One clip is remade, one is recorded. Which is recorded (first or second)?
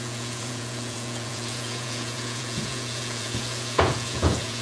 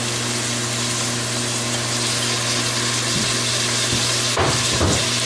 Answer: second